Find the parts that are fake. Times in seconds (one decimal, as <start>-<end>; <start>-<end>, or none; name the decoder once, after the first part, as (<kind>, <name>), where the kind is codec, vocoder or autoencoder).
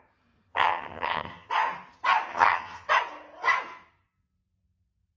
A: 0.5-1.5 (vocoder, HiFi-GAN); 2.3-2.9